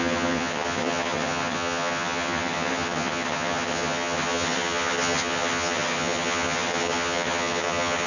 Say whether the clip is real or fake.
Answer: fake